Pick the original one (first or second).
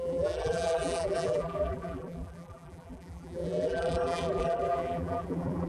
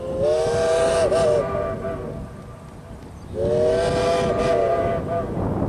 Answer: second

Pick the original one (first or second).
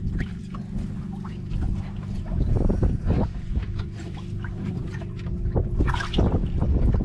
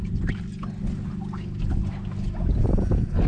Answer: second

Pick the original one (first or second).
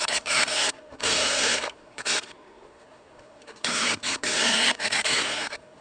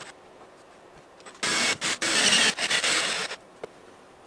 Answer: second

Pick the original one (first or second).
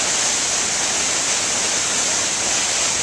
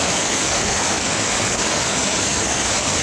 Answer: first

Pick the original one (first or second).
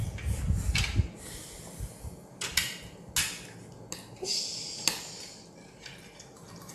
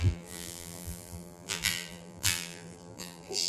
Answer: first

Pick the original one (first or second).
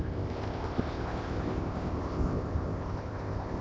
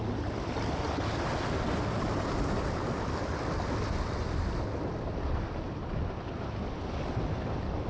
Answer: second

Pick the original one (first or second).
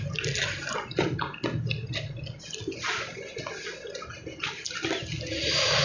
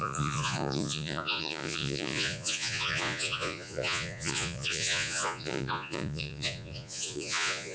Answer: first